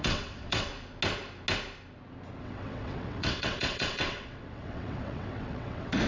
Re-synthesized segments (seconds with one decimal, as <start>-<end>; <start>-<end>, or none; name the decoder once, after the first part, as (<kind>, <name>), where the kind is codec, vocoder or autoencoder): 0.0-0.7 (vocoder, WaveNeXt); 2.4-6.1